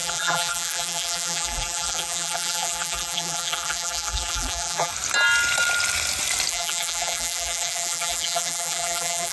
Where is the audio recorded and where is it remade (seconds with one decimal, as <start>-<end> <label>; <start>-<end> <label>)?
0.0-4.9 remade; 4.9-6.5 recorded; 6.5-9.3 remade